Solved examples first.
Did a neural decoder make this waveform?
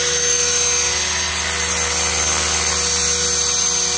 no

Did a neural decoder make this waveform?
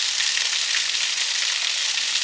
no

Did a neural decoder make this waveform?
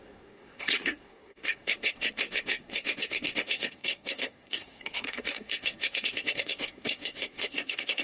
yes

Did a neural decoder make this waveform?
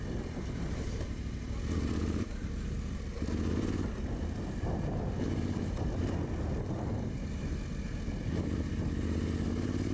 yes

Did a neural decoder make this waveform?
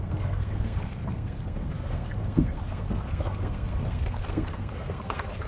yes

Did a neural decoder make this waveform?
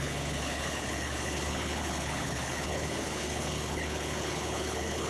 yes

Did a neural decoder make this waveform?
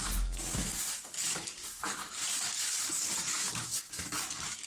yes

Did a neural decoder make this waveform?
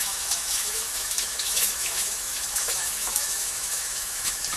yes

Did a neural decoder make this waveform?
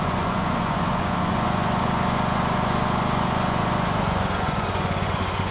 yes